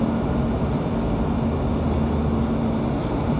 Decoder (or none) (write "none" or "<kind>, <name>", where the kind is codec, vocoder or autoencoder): none